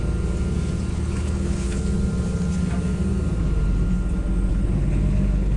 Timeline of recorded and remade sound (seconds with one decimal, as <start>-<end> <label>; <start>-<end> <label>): 0.0-0.9 recorded; 0.9-1.8 remade; 1.8-4.5 recorded; 4.5-5.6 remade